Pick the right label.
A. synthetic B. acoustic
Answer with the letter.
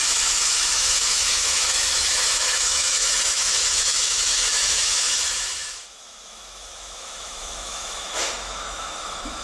A